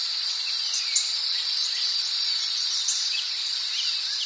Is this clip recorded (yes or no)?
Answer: yes